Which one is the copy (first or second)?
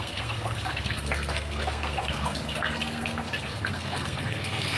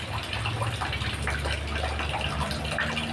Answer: first